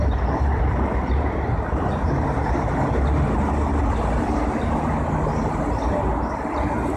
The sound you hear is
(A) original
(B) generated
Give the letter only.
A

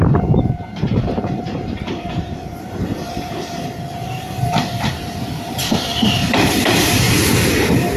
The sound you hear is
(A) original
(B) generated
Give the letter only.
B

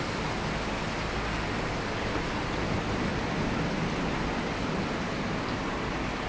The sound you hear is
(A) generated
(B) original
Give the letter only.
B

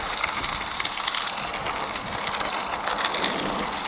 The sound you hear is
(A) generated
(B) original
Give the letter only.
B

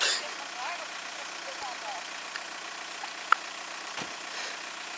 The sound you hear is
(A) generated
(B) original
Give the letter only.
B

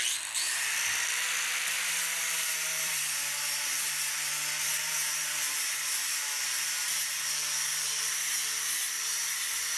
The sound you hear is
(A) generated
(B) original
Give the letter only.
A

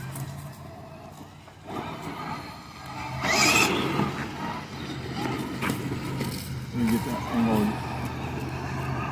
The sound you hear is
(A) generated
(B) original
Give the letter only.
B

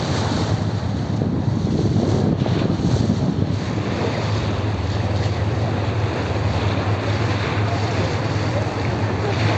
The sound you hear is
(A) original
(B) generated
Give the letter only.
B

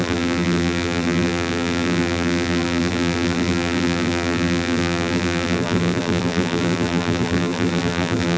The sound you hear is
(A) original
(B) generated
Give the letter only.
B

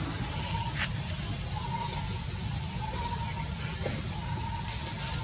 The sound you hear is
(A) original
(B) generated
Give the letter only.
A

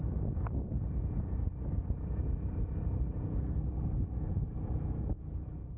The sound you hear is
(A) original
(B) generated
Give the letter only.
A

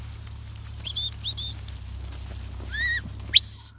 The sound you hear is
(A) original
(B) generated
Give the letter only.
A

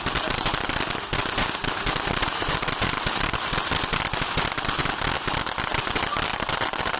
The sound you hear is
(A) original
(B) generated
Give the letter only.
A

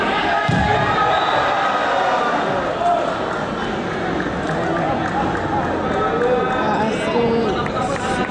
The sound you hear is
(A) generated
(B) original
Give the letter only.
B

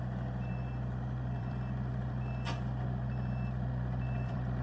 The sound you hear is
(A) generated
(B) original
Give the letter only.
A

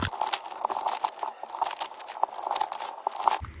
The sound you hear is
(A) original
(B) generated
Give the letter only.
A